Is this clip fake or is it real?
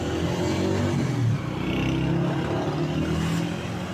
real